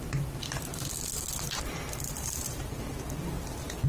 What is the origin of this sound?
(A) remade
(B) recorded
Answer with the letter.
B